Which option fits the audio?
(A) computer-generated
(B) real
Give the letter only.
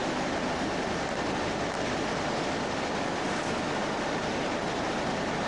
B